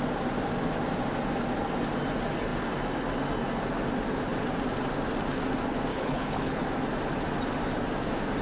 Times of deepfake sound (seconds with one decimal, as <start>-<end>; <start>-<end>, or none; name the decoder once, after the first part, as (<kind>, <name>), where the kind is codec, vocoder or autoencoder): 5.9-6.6 (codec, HILCodec)